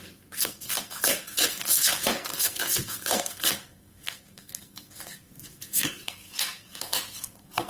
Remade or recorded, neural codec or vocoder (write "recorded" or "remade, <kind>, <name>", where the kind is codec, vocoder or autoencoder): remade, codec, SNAC